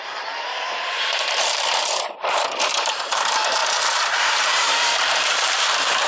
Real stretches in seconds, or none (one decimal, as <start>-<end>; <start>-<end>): none